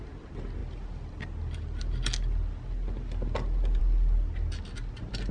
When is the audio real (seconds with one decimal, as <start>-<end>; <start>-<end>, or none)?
0.0-5.3